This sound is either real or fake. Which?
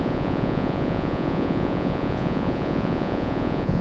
fake